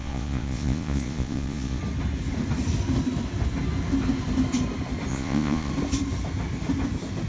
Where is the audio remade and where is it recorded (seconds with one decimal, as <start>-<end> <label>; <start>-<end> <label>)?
0.0-1.8 remade; 1.8-5.1 recorded; 5.1-5.7 remade; 5.7-7.3 recorded